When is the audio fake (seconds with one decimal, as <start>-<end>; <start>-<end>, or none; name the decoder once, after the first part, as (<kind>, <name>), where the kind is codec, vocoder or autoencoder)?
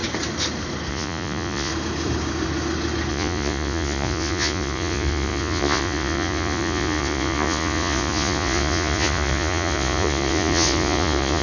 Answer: 0.9-1.7 (vocoder, Vocos); 3.1-11.4